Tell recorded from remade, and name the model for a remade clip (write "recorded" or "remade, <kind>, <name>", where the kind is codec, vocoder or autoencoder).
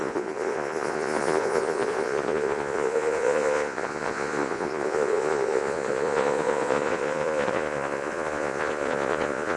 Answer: remade, vocoder, Vocos